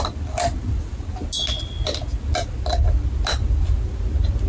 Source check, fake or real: real